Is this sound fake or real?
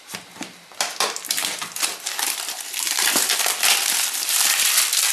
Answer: fake